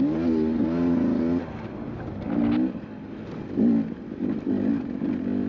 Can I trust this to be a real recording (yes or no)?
yes